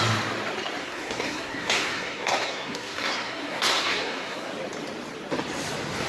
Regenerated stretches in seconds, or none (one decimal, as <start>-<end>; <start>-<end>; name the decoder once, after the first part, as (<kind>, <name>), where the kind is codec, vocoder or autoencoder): 0.8-4.5 (codec, SNAC)